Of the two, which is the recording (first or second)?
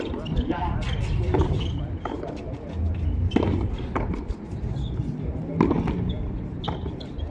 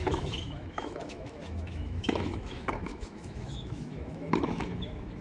first